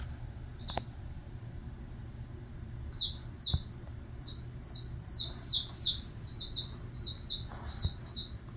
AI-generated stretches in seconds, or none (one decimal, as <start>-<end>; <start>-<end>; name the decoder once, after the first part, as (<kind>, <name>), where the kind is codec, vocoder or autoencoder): none